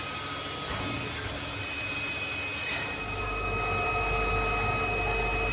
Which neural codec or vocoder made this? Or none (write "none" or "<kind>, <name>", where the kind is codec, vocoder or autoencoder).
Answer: none